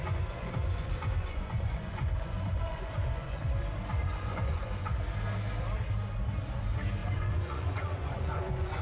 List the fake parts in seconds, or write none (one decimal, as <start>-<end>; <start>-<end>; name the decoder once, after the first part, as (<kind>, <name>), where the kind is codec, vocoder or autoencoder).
0.0-3.4 (vocoder, Vocos); 4.0-4.9; 7.0-8.8